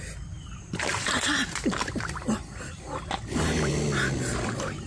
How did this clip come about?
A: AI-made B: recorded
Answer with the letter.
B